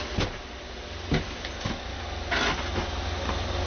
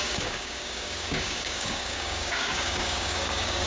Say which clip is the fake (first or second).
second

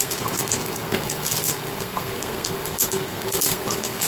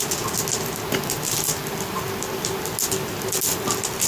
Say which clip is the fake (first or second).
first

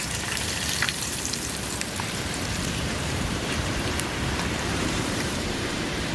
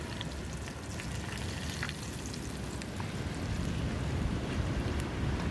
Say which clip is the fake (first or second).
first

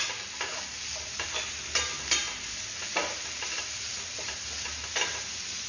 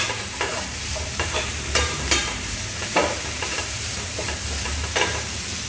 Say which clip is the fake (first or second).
second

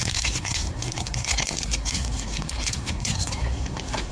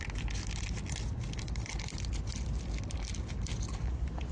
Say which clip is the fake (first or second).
first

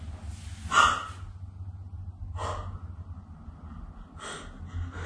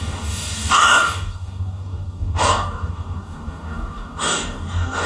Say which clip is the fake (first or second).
second